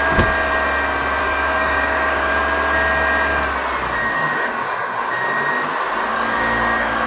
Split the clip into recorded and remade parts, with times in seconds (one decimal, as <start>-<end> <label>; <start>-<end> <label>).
0.0-1.2 recorded; 1.2-2.3 remade; 2.3-4.0 recorded; 4.0-5.1 remade; 5.1-6.1 recorded; 6.1-7.1 remade